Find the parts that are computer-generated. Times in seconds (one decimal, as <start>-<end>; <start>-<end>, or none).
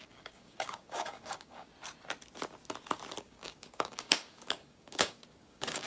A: 0.0-1.7; 3.2-5.9